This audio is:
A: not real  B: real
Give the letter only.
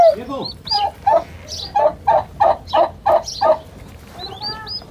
B